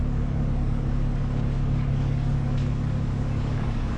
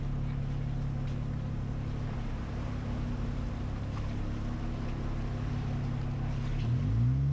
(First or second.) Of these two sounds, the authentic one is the second